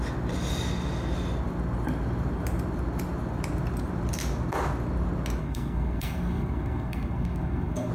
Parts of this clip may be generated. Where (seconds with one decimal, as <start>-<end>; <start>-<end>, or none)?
5.4-7.9